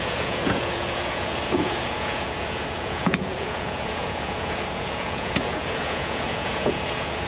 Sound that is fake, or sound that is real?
fake